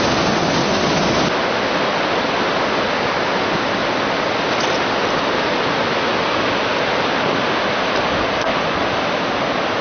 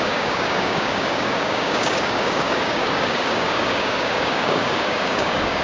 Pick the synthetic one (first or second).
second